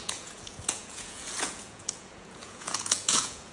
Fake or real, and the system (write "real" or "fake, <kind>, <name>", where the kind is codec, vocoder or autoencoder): fake, vocoder, Vocos